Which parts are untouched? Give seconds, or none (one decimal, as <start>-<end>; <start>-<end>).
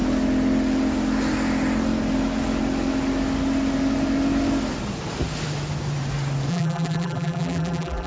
0.0-6.5